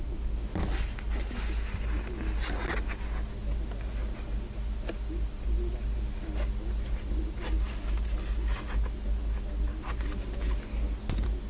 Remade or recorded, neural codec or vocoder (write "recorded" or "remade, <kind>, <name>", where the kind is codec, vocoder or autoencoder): recorded